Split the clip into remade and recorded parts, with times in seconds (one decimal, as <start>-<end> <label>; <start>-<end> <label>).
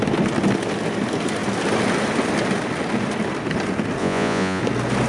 0.0-4.0 recorded; 4.0-4.6 remade; 4.6-5.1 recorded